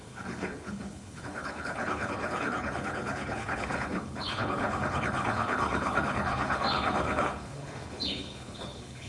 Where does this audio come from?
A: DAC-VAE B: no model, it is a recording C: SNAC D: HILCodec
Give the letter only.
D